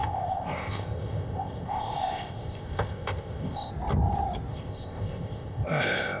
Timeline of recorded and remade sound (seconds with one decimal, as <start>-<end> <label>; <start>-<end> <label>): 0.0-3.7 remade; 3.7-4.5 recorded; 4.5-6.2 remade